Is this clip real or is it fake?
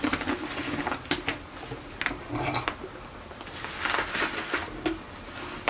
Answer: real